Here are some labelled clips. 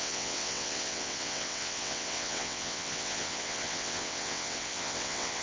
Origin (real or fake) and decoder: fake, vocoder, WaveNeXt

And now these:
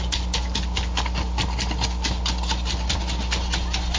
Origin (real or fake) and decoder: real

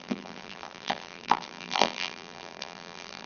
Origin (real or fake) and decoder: fake, vocoder, BigVGAN v2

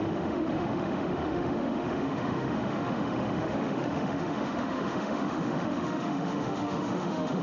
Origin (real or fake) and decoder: fake, autoencoder, DAC-VAE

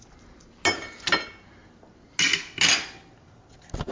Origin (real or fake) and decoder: real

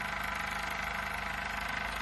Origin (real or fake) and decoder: real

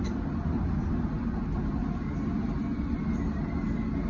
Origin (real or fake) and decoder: real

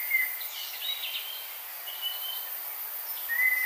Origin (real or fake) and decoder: real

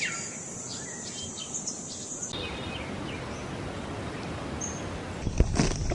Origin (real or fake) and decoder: real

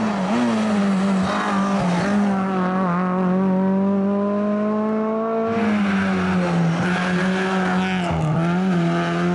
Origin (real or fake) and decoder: real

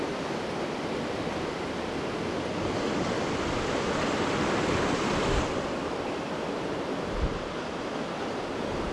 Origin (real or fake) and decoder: real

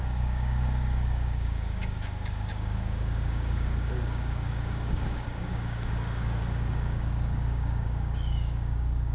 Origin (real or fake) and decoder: fake, codec, DAC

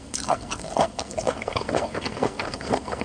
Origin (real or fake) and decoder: fake, codec, SNAC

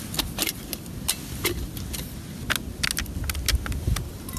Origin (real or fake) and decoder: real